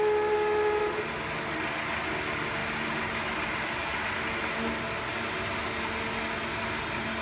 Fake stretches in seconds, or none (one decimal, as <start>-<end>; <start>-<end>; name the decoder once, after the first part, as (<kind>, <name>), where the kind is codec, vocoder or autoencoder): none